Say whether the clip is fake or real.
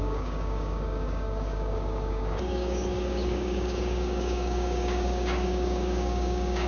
fake